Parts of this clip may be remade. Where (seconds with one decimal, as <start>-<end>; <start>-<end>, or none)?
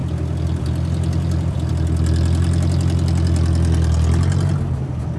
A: none